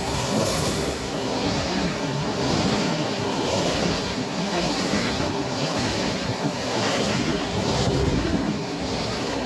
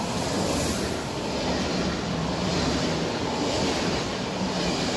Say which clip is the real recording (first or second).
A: second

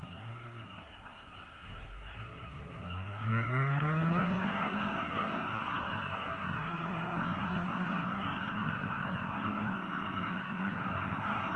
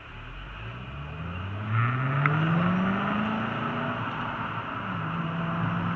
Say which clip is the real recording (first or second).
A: second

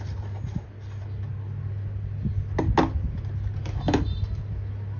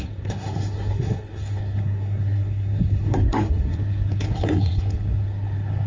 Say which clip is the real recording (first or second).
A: first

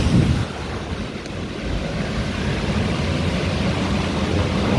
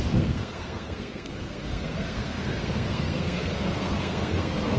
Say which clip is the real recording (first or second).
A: first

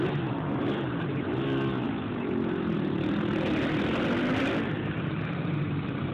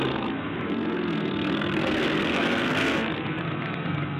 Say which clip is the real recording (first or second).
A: first